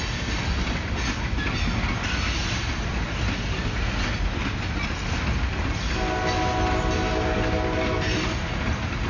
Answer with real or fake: real